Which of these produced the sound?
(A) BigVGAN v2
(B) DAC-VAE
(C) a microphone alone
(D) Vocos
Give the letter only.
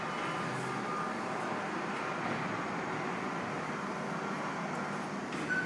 C